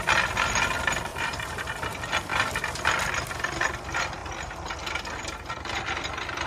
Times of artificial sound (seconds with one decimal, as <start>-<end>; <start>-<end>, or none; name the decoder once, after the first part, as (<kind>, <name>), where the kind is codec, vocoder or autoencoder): 1.1-1.6 (vocoder, BigVGAN v2)